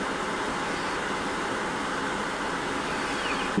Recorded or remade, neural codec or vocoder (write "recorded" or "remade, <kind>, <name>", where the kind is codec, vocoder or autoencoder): recorded